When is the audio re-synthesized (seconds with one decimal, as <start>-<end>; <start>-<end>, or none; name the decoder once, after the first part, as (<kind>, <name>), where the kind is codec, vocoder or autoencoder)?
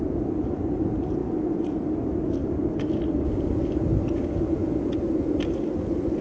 none